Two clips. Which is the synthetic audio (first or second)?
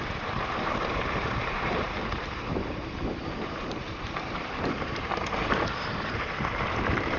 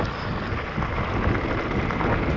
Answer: first